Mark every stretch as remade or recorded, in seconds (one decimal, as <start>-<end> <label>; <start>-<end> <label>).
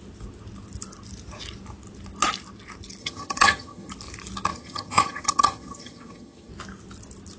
0.0-3.0 recorded; 3.0-3.9 remade; 3.9-4.5 recorded; 4.5-6.5 remade; 6.5-7.4 recorded